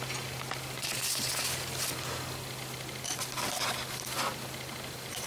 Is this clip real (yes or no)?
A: yes